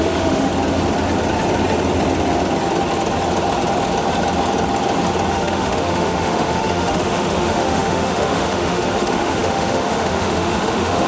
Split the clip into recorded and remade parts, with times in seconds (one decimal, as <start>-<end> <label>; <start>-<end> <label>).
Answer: 0.0-0.5 remade; 0.5-5.3 recorded; 5.3-11.1 remade